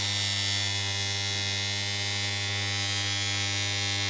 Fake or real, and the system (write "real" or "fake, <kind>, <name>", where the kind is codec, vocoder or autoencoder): real